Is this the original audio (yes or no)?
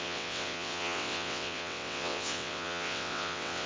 no